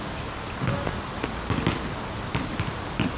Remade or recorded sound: recorded